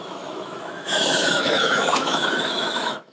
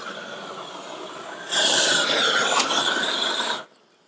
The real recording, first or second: second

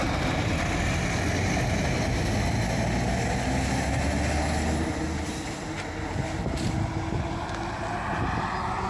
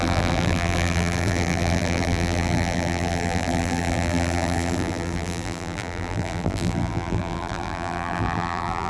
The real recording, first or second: first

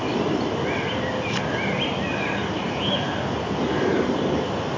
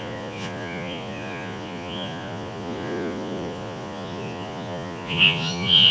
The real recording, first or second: first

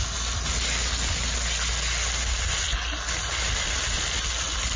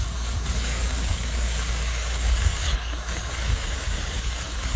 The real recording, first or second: first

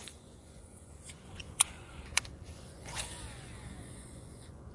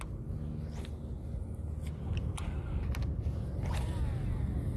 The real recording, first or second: second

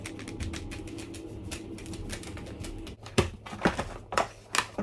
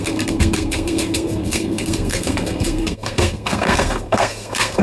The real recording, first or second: first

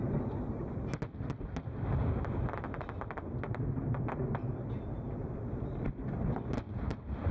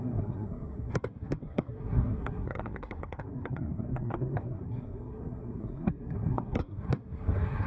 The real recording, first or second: first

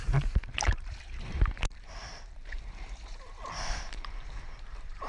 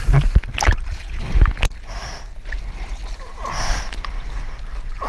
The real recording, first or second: second